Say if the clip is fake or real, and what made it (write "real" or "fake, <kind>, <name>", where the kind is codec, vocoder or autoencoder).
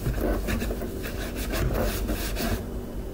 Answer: real